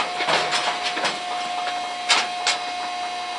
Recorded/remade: recorded